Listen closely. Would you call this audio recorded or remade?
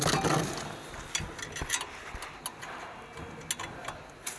recorded